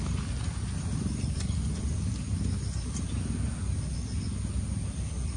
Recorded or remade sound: recorded